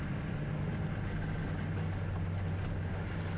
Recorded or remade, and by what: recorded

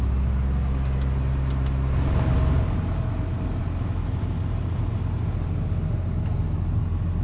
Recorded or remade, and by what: recorded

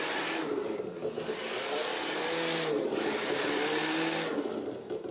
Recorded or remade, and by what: recorded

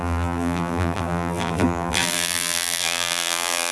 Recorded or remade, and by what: remade, vocoder, BigVGAN v2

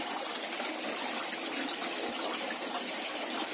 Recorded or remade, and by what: recorded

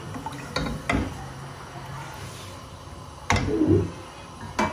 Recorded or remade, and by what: recorded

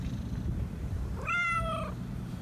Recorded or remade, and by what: remade, vocoder, BigVGAN v2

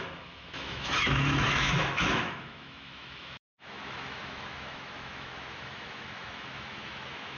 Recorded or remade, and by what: remade, autoencoder, DAC-VAE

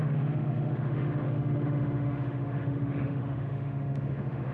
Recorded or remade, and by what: remade, autoencoder, DAC-VAE